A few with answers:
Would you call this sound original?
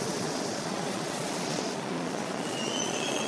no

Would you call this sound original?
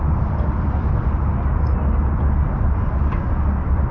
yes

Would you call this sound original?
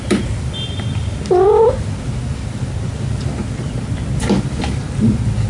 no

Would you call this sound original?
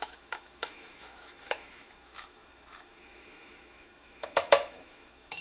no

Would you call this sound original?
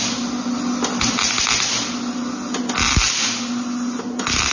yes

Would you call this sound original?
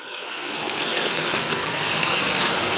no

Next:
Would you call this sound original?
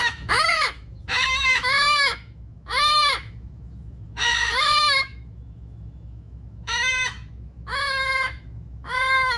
no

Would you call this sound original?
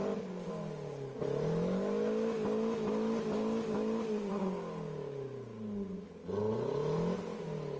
yes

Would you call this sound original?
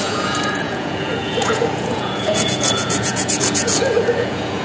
no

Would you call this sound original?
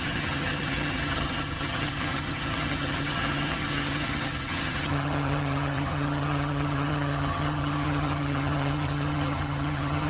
no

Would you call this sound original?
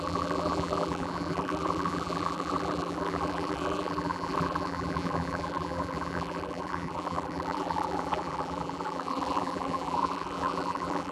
no